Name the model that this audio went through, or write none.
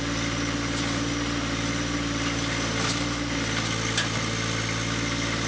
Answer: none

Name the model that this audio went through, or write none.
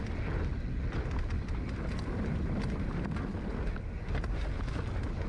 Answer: none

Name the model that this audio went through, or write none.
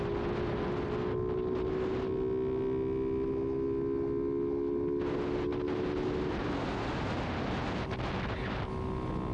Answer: none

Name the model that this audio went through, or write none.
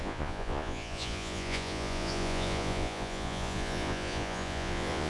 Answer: vocoder, Vocos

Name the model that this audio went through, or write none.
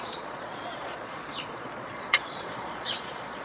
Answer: vocoder, Vocos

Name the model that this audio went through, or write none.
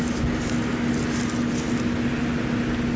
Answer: none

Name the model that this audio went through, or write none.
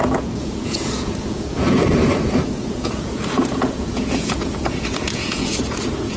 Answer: vocoder, Vocos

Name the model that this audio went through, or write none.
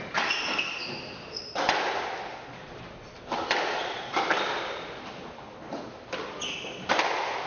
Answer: none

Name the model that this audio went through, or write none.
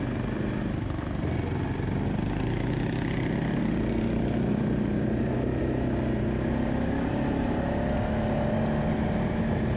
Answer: none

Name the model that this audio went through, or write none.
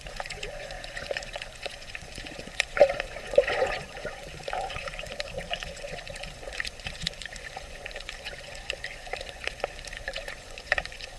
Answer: vocoder, Vocos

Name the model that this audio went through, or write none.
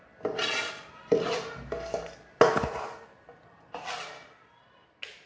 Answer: none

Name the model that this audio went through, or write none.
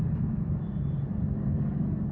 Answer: none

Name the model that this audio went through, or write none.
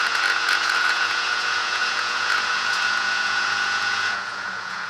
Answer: vocoder, Vocos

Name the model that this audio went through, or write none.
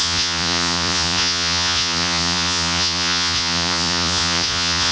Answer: vocoder, Vocos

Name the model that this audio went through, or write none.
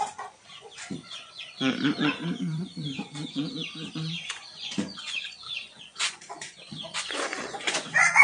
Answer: vocoder, Vocos